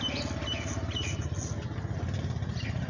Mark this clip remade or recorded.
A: recorded